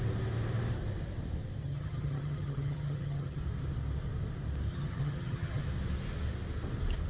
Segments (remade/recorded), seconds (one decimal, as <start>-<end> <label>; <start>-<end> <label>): 0.0-1.6 recorded; 1.6-3.4 remade; 3.4-4.7 recorded; 4.7-5.6 remade; 5.6-7.1 recorded